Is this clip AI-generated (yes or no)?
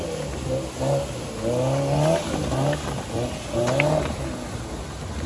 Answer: no